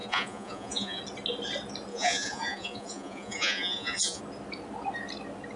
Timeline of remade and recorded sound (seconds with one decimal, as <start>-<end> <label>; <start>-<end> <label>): 0.0-1.0 remade; 1.0-1.9 recorded; 1.9-4.2 remade; 4.2-5.6 recorded